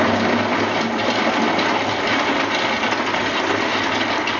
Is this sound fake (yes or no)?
no